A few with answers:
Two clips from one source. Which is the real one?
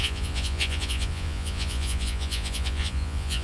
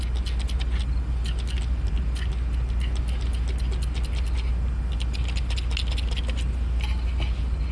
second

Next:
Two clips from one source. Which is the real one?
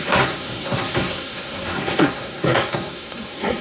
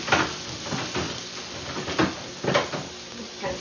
second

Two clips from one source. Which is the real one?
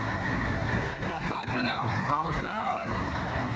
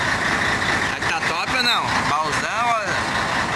second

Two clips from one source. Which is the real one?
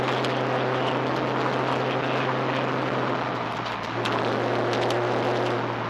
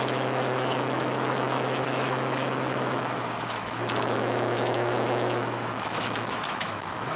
first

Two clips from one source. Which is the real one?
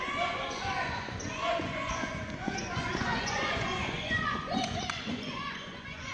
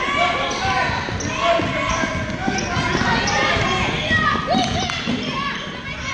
second